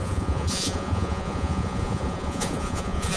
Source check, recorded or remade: remade